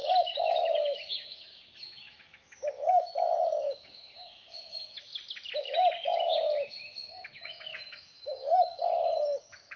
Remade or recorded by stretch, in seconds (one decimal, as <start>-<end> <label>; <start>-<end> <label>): 0.0-5.1 remade; 5.1-5.6 recorded; 5.6-8.8 remade; 8.8-9.4 recorded; 9.4-9.8 remade

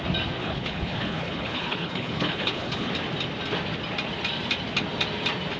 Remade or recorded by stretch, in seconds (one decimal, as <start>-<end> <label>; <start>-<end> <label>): 0.0-0.4 recorded; 0.4-2.9 remade; 2.9-5.6 recorded

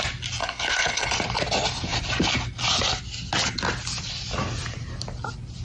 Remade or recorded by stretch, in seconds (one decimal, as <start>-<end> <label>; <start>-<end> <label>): 0.0-0.4 recorded; 0.4-1.1 remade; 1.1-5.6 recorded

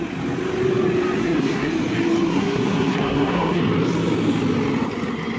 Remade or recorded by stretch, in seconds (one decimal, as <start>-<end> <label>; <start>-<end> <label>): 0.0-1.2 recorded; 1.2-1.7 remade; 1.7-2.3 recorded; 2.3-3.6 remade; 3.6-5.4 recorded

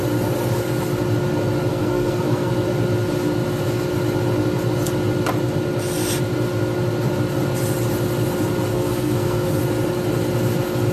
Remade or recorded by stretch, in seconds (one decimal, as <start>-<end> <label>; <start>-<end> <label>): 0.0-1.7 recorded; 1.7-2.5 remade; 2.5-8.7 recorded; 8.7-9.6 remade; 9.6-10.9 recorded

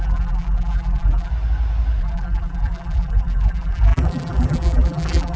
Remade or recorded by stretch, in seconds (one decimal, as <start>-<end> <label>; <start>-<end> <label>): 0.0-1.3 remade; 1.3-2.0 recorded; 2.0-5.4 remade